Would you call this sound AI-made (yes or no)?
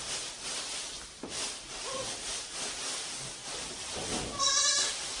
no